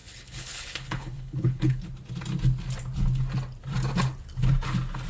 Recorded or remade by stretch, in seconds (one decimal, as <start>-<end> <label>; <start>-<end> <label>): 0.0-1.8 remade; 1.8-5.1 recorded